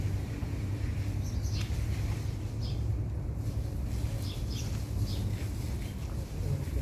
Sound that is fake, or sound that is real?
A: real